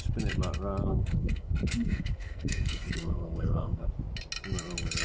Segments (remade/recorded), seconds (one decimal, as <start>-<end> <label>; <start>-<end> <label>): 0.0-0.9 recorded; 0.9-3.9 remade; 3.9-5.0 recorded